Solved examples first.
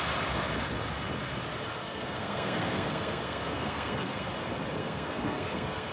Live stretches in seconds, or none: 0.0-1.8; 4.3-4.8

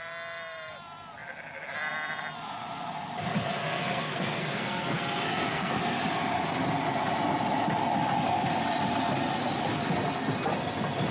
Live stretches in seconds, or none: 0.0-3.6; 5.7-11.1

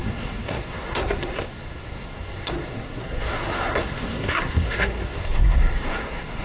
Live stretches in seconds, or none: none

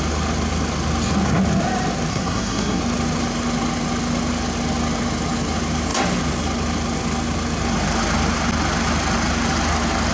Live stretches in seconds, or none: 0.0-2.1; 2.8-10.1

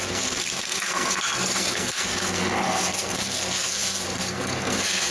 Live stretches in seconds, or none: none

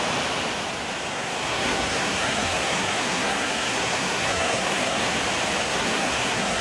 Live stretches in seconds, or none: 0.0-1.1; 5.1-5.6

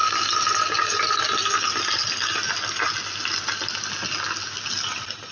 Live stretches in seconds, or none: 0.0-5.3

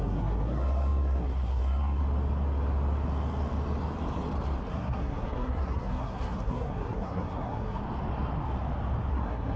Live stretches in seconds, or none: 2.0-4.7; 7.8-9.1